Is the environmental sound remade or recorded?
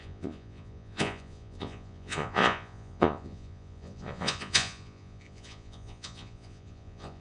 remade